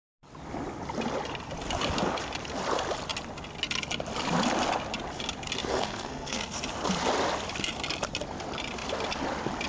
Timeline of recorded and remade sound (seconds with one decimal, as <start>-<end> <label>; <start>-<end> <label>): 0.0-5.7 recorded; 5.7-6.4 remade; 6.4-9.7 recorded

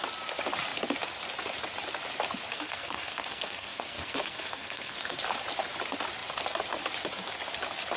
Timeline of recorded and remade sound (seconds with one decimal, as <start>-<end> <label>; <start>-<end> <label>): 0.0-2.5 recorded; 2.5-5.2 remade; 5.2-8.0 recorded

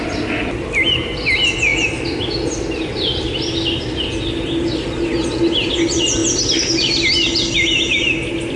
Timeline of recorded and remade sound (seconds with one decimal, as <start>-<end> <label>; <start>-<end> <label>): 0.0-8.6 recorded

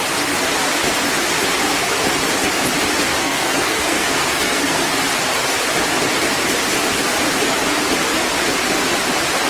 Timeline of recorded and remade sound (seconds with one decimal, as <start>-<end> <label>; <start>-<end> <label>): 0.0-3.2 recorded; 3.2-4.9 remade; 4.9-9.5 recorded

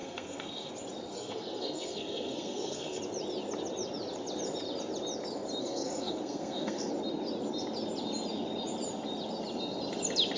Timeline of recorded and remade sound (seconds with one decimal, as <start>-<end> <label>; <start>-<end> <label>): 0.0-0.7 remade; 0.7-1.1 recorded; 1.1-3.0 remade; 3.0-5.6 recorded; 5.6-6.9 remade; 6.9-10.4 recorded